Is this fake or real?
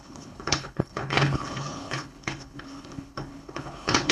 fake